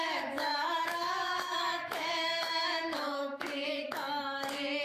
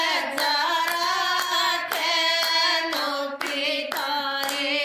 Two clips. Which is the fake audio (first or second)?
first